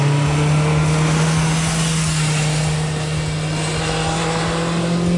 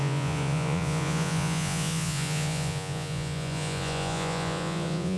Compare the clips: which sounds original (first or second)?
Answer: first